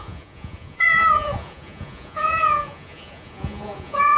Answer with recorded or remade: remade